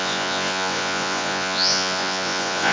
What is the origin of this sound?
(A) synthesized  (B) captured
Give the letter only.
A